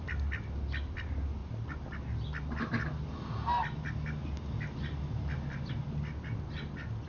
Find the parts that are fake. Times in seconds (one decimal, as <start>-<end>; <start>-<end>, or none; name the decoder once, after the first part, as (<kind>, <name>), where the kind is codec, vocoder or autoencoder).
none